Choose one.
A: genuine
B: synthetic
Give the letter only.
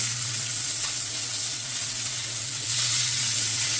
B